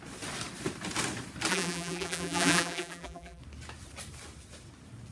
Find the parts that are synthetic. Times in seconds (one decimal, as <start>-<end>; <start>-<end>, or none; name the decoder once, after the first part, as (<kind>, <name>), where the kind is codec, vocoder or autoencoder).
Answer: 1.5-3.4 (vocoder, BigVGAN v2)